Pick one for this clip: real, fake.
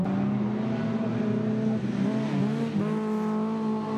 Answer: real